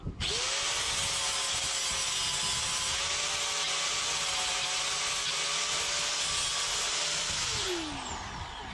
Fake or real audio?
real